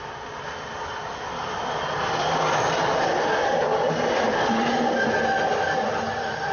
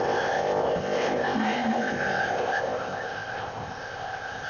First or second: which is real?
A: first